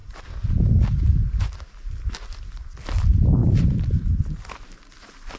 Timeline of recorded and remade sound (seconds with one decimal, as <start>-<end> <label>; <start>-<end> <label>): 0.0-3.4 recorded; 3.4-4.8 remade; 4.8-5.4 recorded